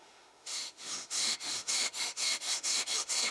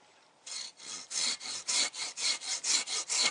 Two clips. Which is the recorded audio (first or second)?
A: second